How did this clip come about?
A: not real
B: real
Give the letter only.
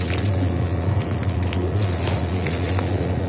A